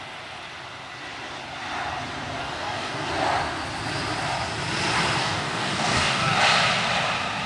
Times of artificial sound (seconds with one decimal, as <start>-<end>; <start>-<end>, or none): 2.4-3.1; 5.2-6.4